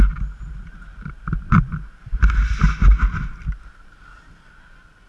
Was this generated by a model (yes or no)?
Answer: no